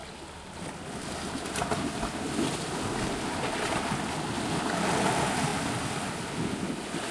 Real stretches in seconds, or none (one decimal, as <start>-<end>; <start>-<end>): 0.0-7.1